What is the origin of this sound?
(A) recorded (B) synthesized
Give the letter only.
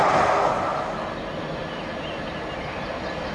A